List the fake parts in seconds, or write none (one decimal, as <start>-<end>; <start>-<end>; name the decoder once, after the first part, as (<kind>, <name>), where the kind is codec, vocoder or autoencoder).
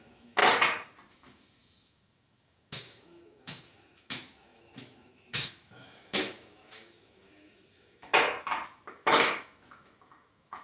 0.0-0.4 (autoencoder, DAC-VAE); 1.1-8.1; 8.9-10.6